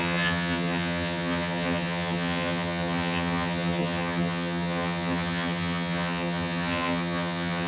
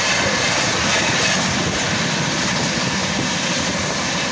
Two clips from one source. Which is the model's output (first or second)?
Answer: first